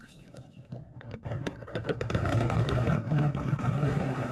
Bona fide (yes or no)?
no